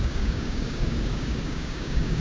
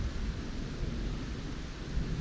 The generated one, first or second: first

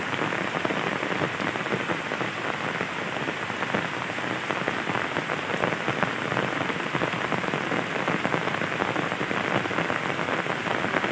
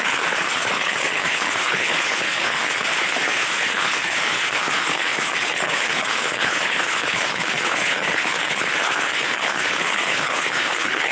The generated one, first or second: second